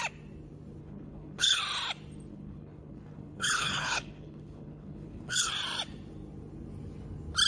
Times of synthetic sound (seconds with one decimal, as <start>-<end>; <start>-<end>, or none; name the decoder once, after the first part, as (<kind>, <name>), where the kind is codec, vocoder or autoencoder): 0.8-1.6 (codec, HILCodec); 2.3-5.5